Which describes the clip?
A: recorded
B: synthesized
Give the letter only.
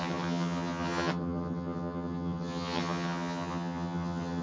B